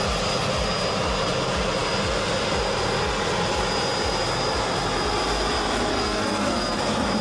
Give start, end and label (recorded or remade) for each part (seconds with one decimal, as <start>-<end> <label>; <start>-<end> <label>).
0.0-5.9 recorded; 5.9-6.8 remade; 6.8-7.2 recorded